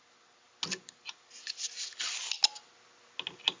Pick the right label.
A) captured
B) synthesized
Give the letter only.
A